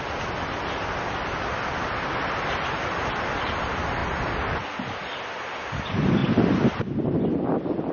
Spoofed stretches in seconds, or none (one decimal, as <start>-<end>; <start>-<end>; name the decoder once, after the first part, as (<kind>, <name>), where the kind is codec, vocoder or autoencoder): none